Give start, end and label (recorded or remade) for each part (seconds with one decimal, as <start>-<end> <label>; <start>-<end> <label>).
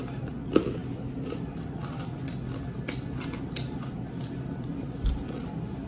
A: 0.0-5.9 recorded